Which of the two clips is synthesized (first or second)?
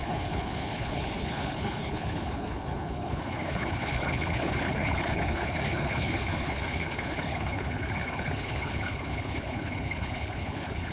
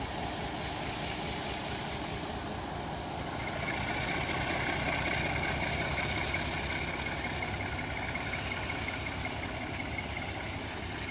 first